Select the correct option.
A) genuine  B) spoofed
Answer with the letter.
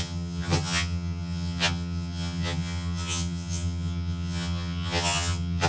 B